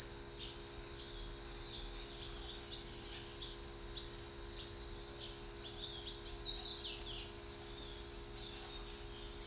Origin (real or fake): real